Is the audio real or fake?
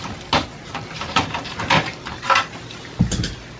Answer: real